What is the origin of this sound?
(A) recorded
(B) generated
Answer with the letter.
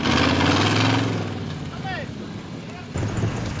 A